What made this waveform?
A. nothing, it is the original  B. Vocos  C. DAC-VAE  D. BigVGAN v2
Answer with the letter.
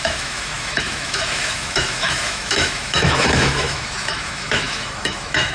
C